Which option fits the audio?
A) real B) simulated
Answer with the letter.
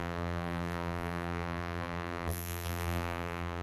B